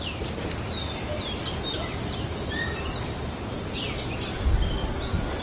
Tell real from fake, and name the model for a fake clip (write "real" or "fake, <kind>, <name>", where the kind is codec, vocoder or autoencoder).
real